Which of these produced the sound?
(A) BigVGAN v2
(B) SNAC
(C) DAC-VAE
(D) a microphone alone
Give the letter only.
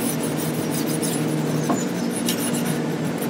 D